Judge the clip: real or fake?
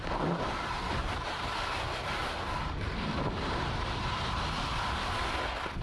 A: real